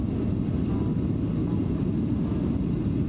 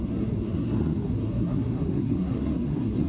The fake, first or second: second